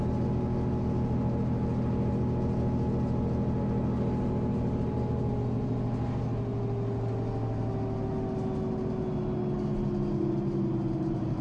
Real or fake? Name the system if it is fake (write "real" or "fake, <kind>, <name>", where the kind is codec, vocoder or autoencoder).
real